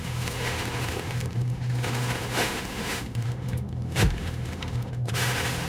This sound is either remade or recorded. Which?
remade